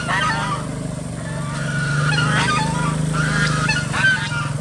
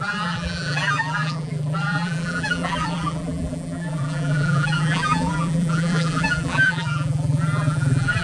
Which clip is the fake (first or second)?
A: second